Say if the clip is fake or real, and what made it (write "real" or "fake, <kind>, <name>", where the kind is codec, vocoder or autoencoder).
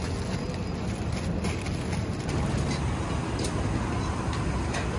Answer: real